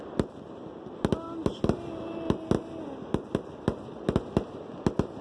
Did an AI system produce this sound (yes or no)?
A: no